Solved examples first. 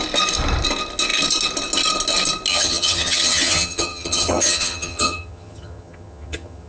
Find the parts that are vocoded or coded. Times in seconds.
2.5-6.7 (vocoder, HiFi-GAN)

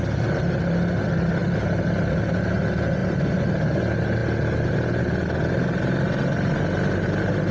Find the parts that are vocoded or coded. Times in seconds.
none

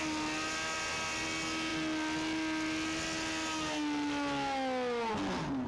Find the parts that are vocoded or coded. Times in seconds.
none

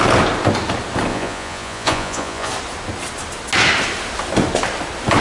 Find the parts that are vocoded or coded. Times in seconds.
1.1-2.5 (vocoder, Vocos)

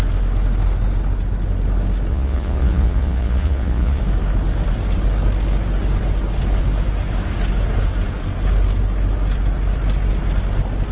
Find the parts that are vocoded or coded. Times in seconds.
2.1-4.0 (vocoder, Vocos)